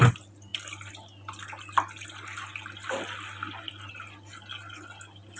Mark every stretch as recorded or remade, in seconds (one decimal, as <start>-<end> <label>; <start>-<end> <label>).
0.0-5.4 recorded